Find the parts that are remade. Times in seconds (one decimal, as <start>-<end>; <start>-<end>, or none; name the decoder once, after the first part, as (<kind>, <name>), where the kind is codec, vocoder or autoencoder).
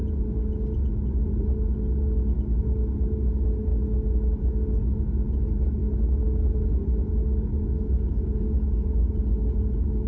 none